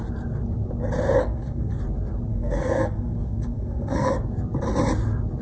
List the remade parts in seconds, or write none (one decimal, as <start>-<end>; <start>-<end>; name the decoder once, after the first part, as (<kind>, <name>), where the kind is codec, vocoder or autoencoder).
1.2-1.8 (codec, SNAC); 2.3-4.1